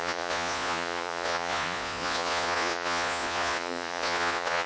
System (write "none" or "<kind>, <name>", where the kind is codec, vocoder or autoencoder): vocoder, Vocos